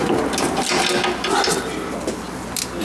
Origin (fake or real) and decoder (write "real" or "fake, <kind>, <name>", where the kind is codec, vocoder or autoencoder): real